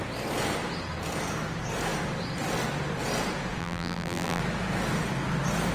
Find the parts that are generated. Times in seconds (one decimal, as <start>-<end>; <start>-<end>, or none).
3.6-4.4